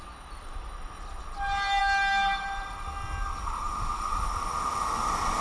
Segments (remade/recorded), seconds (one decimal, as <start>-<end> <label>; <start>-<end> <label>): 0.0-5.4 recorded